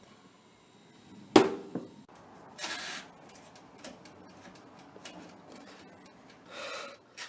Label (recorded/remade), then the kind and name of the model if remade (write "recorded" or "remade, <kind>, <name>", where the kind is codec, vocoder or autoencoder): recorded